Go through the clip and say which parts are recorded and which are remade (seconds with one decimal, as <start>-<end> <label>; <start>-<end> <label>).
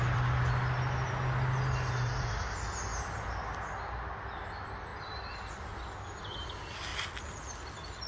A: 0.0-8.1 recorded